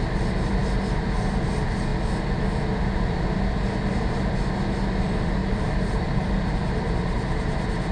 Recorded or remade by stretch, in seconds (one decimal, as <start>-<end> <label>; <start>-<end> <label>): 0.0-5.4 recorded; 5.4-6.2 remade; 6.2-7.9 recorded